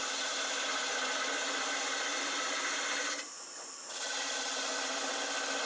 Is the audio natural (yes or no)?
yes